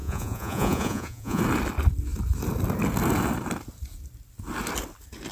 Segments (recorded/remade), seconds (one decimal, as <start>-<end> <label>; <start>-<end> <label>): 0.0-1.4 remade; 1.4-5.3 recorded